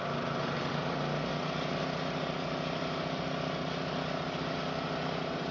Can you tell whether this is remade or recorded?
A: recorded